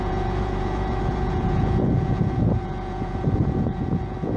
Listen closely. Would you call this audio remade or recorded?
remade